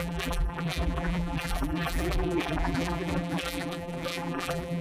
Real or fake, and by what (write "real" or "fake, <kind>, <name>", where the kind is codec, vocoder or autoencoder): fake, vocoder, BigVGAN v2